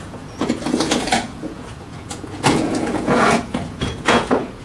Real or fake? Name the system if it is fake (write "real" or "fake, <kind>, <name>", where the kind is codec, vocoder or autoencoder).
fake, vocoder, Vocos